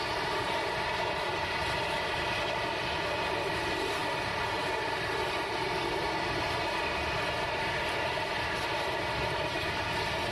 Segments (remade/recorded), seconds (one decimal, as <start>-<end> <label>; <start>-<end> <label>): 0.0-10.3 recorded